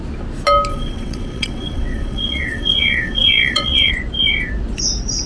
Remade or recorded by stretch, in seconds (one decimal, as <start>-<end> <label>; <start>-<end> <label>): 0.0-0.7 recorded; 0.7-3.9 remade; 3.9-5.3 recorded

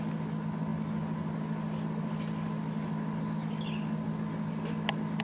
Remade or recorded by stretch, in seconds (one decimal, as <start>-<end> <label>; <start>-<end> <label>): 0.0-5.2 recorded

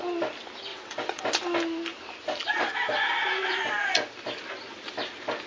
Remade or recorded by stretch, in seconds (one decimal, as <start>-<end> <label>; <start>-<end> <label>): 0.0-0.7 recorded; 0.7-1.2 remade; 1.2-5.5 recorded

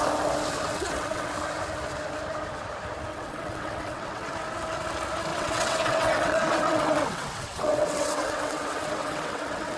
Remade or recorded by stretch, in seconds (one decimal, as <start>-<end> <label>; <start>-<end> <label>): 0.0-0.7 recorded; 0.7-1.3 remade; 1.3-3.1 recorded; 3.1-4.3 remade; 4.3-5.3 recorded; 5.3-9.8 remade

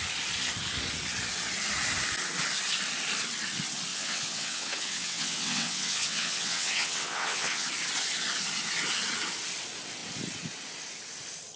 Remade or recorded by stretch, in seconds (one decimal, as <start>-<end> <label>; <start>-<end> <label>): 0.0-3.9 recorded; 3.9-7.7 remade; 7.7-11.6 recorded

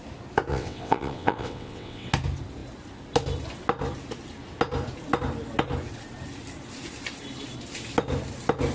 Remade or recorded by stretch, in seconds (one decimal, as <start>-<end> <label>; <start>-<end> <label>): 0.0-0.5 recorded; 0.5-2.1 remade; 2.1-8.7 recorded